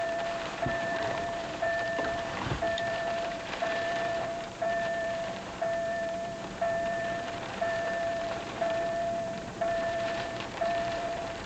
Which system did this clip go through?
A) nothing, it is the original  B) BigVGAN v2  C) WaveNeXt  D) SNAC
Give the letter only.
B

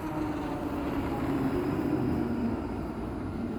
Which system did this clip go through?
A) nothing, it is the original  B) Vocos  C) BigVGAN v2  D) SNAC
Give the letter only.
A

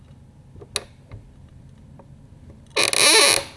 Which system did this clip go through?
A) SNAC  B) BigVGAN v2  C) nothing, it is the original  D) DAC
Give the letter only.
C